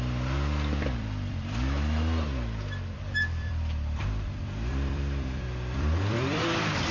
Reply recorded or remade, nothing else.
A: remade